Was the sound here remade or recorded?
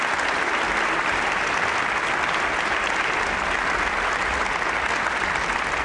recorded